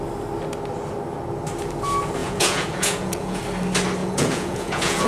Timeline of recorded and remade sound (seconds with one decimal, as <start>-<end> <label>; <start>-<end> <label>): 0.0-2.2 recorded; 2.2-3.4 remade; 3.4-4.0 recorded; 4.0-5.1 remade